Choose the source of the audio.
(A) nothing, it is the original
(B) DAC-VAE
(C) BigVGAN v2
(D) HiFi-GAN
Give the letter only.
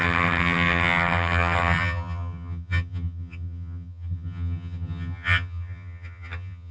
D